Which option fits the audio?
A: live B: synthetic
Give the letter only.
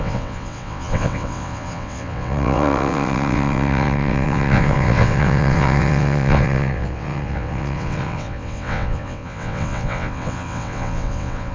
B